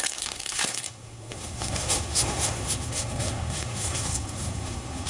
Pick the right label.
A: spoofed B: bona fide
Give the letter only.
A